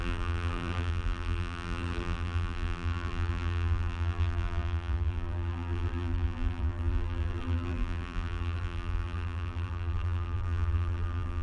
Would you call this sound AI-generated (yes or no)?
yes